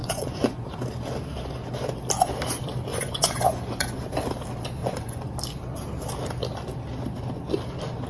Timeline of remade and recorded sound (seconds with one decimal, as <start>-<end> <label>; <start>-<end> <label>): 0.0-0.7 remade; 0.7-2.9 recorded; 2.9-4.0 remade; 4.0-4.8 recorded; 4.8-5.3 remade; 5.3-8.1 recorded